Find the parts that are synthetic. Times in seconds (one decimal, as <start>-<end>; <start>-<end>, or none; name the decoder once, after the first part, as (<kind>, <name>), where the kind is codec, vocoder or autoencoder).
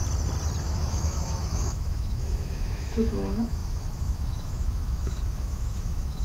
0.6-6.2 (autoencoder, DAC-VAE)